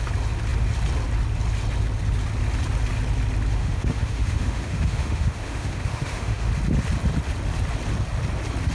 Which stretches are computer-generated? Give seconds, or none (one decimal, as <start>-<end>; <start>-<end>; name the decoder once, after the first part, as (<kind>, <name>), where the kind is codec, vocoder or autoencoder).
3.6-6.5 (autoencoder, DAC-VAE)